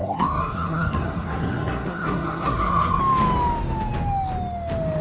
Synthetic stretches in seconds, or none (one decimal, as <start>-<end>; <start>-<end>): 0.0-3.0